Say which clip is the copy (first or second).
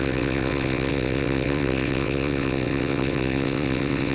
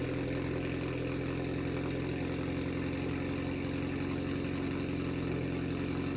first